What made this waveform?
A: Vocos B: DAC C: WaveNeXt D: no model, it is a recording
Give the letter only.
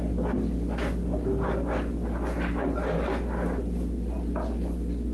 D